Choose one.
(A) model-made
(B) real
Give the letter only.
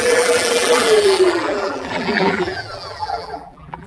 A